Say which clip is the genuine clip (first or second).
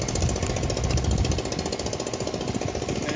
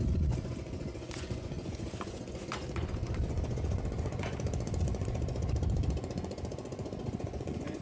first